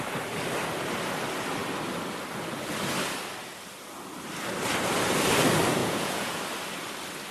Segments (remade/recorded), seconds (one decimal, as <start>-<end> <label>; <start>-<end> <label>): 0.0-5.8 recorded; 5.8-6.4 remade; 6.4-7.3 recorded